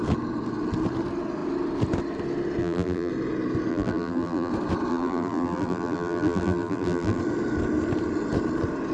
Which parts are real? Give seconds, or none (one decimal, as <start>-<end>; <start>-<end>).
0.0-2.6; 3.1-3.7; 4.5-4.9; 7.2-8.9